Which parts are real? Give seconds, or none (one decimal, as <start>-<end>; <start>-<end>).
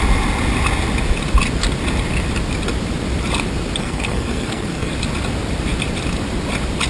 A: 0.0-3.8; 4.9-6.9